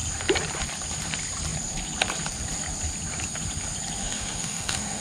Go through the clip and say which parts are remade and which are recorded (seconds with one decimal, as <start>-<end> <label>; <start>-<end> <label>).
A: 0.0-4.0 recorded; 4.0-5.0 remade